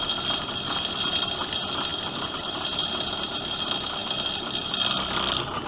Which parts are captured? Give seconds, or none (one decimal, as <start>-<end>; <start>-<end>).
0.0-5.7